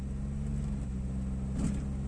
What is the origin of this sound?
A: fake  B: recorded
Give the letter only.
B